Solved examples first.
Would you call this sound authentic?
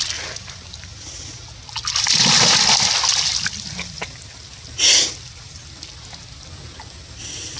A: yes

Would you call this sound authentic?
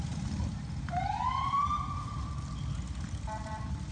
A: yes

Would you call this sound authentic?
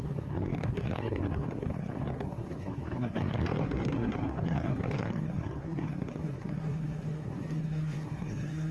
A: no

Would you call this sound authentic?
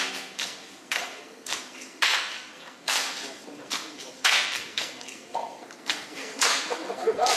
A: no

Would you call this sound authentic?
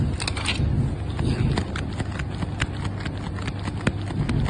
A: yes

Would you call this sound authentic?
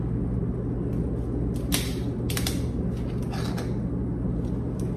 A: yes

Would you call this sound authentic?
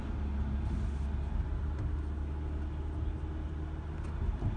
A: yes